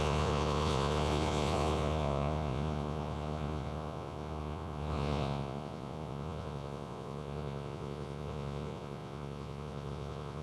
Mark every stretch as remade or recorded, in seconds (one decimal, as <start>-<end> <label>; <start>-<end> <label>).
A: 0.0-10.4 remade